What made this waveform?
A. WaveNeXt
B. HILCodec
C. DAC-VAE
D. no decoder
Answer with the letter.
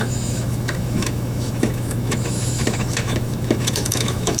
C